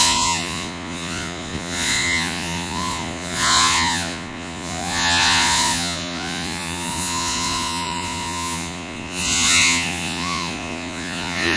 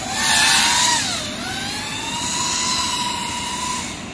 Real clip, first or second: second